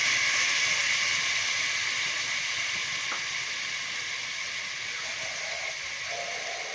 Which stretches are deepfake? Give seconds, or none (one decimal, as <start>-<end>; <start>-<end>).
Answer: none